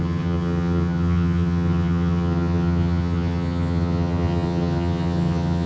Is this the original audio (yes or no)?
no